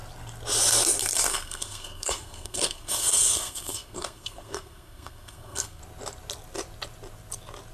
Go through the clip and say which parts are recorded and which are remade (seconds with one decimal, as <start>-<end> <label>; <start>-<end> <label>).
0.0-1.3 recorded; 1.3-5.8 remade; 5.8-7.7 recorded